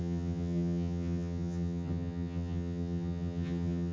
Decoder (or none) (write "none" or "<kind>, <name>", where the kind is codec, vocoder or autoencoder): vocoder, HiFi-GAN